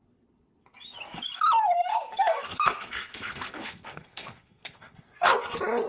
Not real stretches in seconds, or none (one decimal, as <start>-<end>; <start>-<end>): 1.9-5.3